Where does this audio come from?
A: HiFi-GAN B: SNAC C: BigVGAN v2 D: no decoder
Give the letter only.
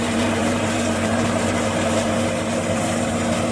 C